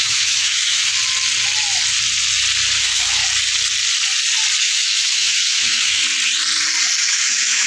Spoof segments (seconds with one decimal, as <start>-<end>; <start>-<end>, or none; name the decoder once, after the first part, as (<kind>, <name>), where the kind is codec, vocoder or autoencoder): 0.0-0.9 (autoencoder, DAC-VAE); 2.8-3.2; 4.6-6.0; 7.0-7.7